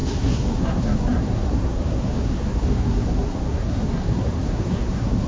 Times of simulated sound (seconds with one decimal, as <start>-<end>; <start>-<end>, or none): 0.0-5.3